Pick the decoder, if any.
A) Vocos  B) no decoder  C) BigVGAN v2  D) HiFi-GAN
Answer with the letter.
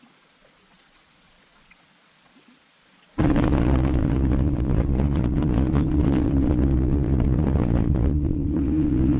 A